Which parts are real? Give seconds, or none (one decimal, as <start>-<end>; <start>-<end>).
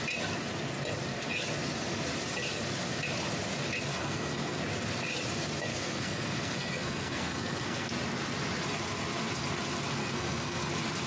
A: 0.0-3.9; 4.6-5.7; 7.9-10.0; 10.7-11.1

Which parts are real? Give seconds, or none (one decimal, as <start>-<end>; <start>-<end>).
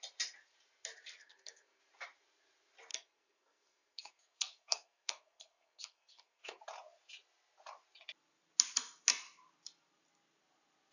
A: 0.0-1.2; 1.8-2.9; 6.6-10.9